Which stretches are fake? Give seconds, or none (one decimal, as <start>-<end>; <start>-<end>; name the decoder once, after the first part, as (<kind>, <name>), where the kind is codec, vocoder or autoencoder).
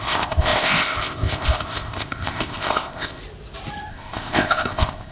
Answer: 0.0-3.2 (codec, ZipCodec); 3.9-5.1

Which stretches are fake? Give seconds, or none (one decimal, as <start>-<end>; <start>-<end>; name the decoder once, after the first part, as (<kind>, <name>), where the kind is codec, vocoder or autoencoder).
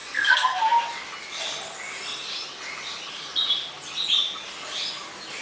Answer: 0.0-0.6 (codec, SNAC)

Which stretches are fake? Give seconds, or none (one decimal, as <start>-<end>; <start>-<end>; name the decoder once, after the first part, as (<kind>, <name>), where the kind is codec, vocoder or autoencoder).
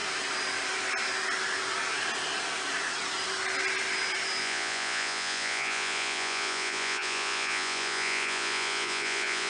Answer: 4.4-9.5 (vocoder, Vocos)